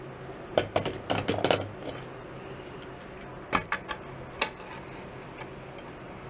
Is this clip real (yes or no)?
yes